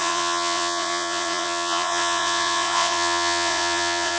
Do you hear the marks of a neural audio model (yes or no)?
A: yes